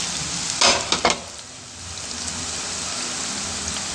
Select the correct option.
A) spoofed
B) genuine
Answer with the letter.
B